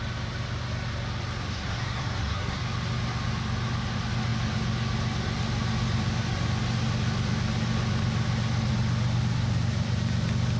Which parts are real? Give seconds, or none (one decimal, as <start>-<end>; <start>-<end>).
0.0-1.5; 2.6-10.6